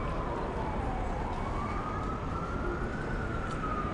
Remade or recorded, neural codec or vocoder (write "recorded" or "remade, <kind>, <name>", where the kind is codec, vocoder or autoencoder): recorded